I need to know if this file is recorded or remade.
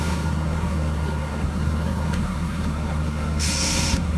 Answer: remade